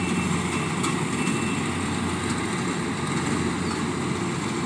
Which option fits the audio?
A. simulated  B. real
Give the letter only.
B